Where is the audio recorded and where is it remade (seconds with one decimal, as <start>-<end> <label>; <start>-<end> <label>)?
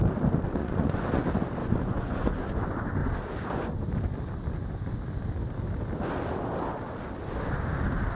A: 0.0-0.6 recorded; 0.6-1.2 remade; 1.2-1.6 recorded; 1.6-2.4 remade; 2.4-8.1 recorded